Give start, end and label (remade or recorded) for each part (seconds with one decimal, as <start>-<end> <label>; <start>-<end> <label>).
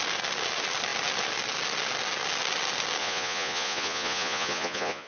0.0-3.0 recorded; 3.0-5.1 remade